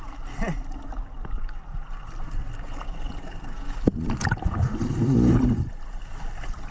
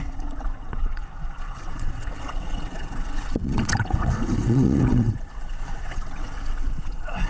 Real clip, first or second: first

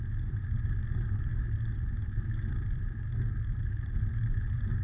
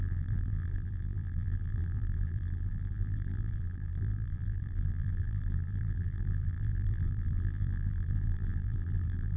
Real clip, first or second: first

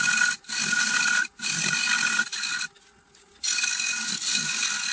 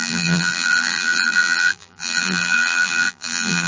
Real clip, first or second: first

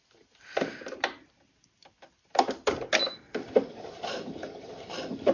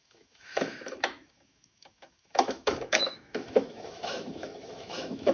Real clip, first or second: first